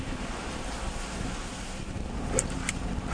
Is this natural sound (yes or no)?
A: yes